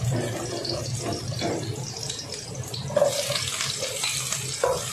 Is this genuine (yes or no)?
yes